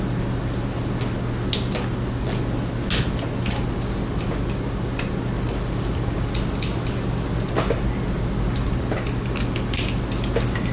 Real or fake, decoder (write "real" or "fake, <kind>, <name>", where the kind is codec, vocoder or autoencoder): real